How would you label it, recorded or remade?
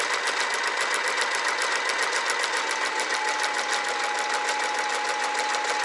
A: recorded